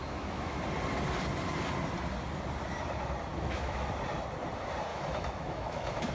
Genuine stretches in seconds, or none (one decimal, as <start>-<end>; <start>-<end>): 0.6-3.3; 3.9-4.9